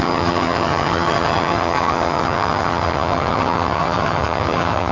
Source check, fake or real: fake